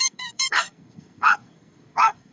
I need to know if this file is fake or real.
fake